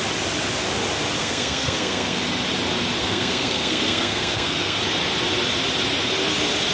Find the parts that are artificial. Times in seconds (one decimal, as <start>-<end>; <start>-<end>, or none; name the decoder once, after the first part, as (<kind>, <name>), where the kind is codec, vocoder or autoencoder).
1.2-2.2 (codec, SNAC); 3.0-4.8